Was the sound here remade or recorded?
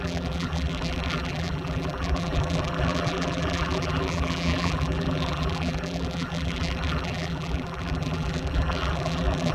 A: remade